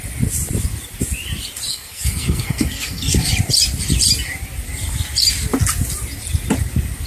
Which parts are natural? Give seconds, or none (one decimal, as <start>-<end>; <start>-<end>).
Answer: 0.0-1.7; 3.3-7.1